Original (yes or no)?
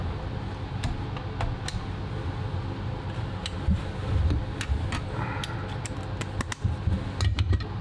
yes